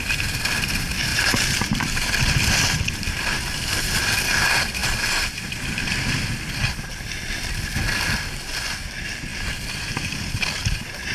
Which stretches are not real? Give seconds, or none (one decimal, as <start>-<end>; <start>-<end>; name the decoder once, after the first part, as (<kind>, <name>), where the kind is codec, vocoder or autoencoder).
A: 1.1-2.9 (vocoder, BigVGAN v2)